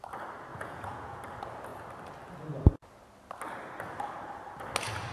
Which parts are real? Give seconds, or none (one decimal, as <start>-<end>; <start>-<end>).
0.0-0.5; 1.2-5.1